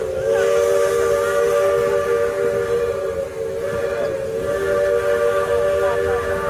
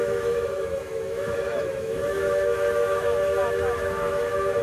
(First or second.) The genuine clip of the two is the first